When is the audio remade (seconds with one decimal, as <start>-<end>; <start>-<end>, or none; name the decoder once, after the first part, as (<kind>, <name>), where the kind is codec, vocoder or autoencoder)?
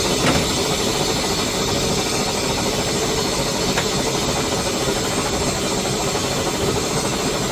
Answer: none